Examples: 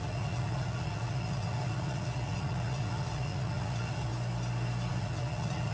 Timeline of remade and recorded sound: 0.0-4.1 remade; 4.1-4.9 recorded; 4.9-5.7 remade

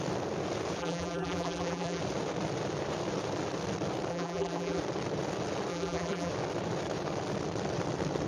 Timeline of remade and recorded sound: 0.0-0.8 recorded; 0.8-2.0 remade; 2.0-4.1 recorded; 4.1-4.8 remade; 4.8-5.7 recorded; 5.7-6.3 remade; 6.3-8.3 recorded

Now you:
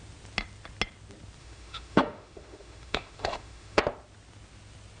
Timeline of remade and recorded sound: 0.0-1.4 recorded; 1.4-3.8 remade; 3.8-5.0 recorded

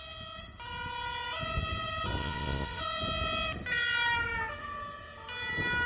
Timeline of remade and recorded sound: 0.0-2.2 recorded; 2.2-2.8 remade; 2.8-5.9 recorded

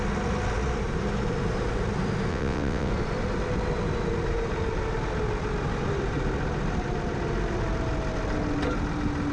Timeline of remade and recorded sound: 0.0-2.3 recorded; 2.3-2.9 remade; 2.9-9.3 recorded

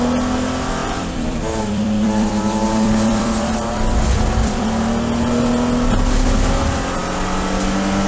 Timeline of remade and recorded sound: 0.0-0.8 recorded; 0.8-4.8 remade; 4.8-8.1 recorded

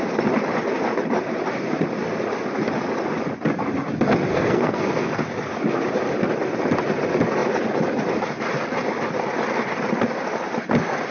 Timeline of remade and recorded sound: 0.0-4.3 recorded; 4.3-5.2 remade; 5.2-11.1 recorded

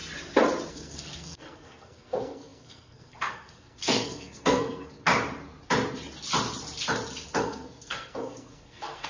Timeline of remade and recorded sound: 0.0-0.7 recorded; 0.7-5.1 remade; 5.1-7.4 recorded; 7.4-9.1 remade